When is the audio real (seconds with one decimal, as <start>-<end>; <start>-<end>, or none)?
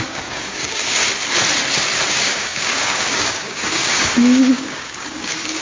1.0-2.1